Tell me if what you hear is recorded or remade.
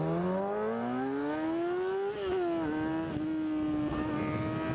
recorded